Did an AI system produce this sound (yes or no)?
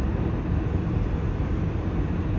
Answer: no